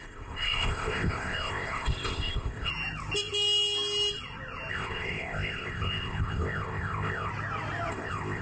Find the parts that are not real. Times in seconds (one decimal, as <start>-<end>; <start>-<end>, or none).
0.0-2.7; 4.7-7.3; 7.9-8.4